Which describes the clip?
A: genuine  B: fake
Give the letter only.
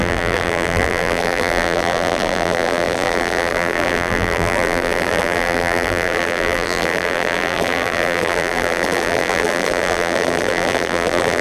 B